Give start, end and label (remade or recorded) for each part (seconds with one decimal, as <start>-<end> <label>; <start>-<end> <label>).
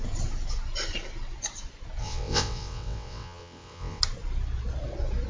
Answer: 0.0-2.0 recorded; 2.0-4.0 remade; 4.0-5.3 recorded